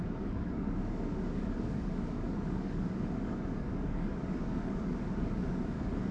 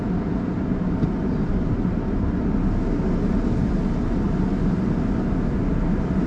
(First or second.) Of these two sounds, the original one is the second